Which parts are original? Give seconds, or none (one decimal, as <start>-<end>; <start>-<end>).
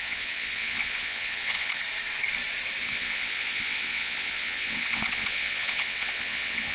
1.8-2.8